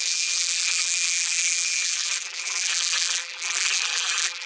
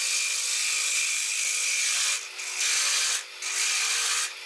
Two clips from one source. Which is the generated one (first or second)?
first